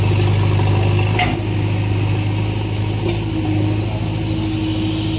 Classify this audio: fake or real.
real